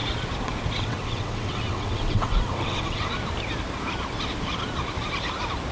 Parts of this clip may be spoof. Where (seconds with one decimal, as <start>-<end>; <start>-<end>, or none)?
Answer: 0.8-3.1